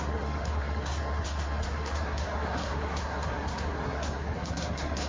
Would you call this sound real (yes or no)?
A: no